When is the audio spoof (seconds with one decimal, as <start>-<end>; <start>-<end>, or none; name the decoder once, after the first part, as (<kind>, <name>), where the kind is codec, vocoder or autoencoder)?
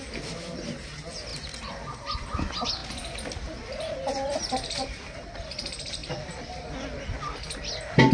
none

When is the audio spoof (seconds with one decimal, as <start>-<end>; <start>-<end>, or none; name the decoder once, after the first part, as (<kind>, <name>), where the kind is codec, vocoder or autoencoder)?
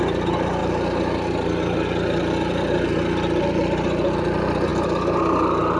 none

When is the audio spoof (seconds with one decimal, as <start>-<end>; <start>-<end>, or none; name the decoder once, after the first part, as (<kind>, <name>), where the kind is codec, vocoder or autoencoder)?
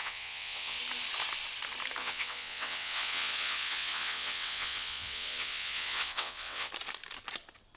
0.0-0.8 (vocoder, WaveNeXt); 2.0-6.7